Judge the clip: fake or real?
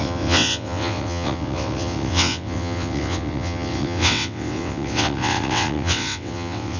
fake